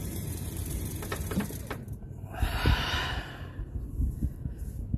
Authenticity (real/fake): fake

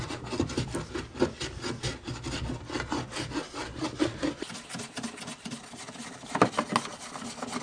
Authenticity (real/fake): real